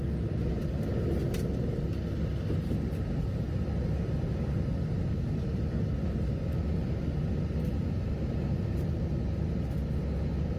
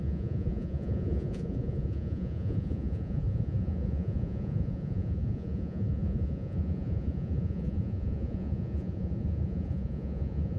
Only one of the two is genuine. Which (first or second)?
first